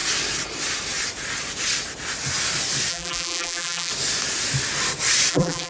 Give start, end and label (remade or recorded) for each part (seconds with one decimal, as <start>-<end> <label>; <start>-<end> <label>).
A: 0.0-2.9 recorded; 2.9-3.9 remade; 3.9-5.3 recorded; 5.3-5.7 remade